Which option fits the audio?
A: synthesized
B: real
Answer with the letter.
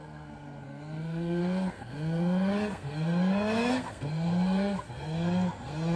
A